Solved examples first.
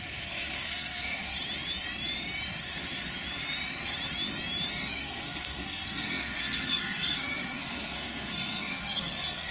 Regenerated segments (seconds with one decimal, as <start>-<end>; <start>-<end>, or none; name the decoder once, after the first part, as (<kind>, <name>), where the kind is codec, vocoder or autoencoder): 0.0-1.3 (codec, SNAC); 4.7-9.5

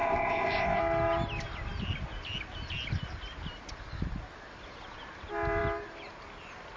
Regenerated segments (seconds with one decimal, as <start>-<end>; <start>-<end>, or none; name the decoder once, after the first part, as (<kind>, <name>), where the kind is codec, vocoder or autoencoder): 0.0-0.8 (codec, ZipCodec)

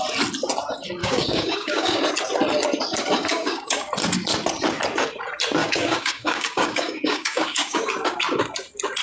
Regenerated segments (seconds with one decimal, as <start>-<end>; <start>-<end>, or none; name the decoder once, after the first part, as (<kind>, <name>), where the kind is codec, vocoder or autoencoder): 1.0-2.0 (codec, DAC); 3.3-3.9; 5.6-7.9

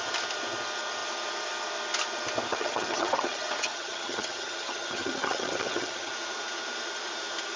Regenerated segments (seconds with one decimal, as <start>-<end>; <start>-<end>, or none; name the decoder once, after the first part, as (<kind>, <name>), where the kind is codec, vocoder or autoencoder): 2.5-6.1 (vocoder, HiFi-GAN)

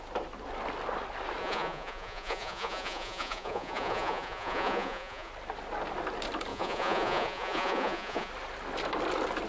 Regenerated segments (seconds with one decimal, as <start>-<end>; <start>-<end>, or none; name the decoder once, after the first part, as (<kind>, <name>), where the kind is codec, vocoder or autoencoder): 1.4-5.3 (vocoder, Vocos); 6.5-8.3